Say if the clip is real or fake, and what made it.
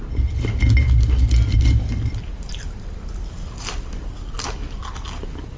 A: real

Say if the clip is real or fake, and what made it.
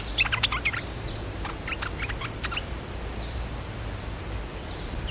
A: real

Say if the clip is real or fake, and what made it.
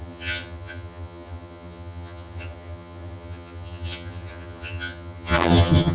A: fake, vocoder, HiFi-GAN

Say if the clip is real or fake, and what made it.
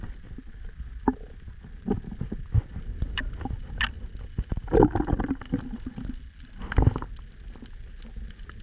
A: real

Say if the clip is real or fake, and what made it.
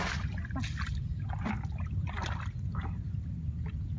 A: real